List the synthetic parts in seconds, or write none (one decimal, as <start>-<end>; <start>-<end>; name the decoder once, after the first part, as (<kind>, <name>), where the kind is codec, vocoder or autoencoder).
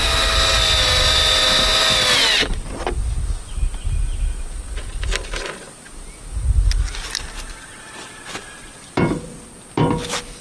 none